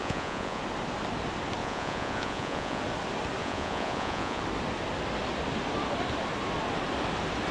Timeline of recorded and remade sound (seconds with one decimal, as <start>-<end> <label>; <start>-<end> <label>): 0.0-0.6 remade; 0.6-1.6 recorded; 1.6-2.8 remade; 2.8-3.4 recorded; 3.4-4.4 remade; 4.4-7.5 recorded